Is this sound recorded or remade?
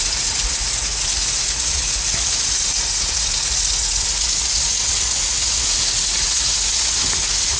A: remade